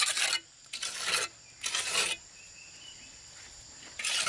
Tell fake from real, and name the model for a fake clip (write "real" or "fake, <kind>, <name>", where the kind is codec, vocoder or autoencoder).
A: real